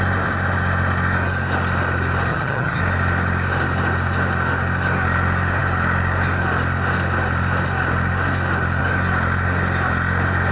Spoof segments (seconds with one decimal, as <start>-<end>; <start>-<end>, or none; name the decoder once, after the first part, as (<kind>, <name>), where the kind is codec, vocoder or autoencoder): 2.3-2.8 (vocoder, HiFi-GAN)